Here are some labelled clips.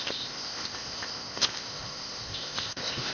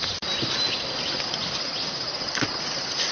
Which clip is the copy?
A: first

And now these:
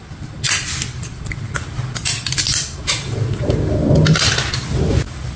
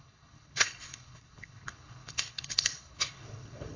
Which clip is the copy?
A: second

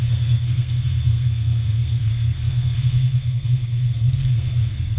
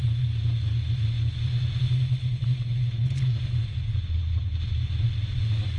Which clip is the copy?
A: first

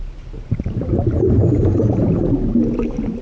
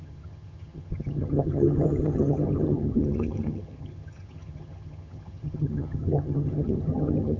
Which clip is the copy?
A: second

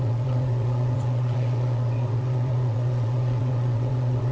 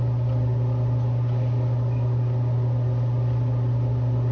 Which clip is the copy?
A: first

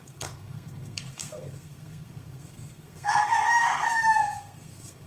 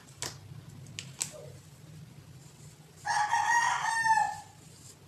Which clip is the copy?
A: first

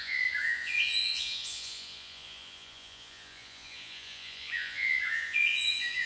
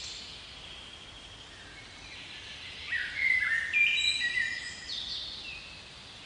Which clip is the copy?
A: first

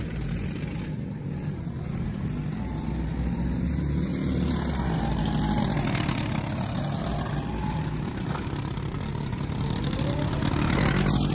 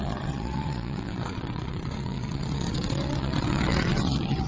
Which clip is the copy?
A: second